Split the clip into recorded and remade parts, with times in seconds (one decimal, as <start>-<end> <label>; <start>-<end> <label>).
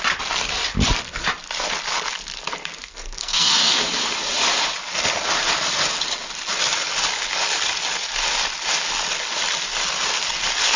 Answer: 0.0-2.8 recorded; 2.8-3.8 remade; 3.8-10.8 recorded